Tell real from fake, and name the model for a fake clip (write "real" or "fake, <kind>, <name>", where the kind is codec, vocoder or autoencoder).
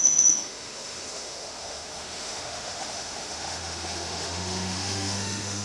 fake, autoencoder, DAC-VAE